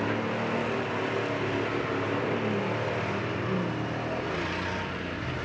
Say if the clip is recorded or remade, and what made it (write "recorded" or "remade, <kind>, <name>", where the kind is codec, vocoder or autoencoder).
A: recorded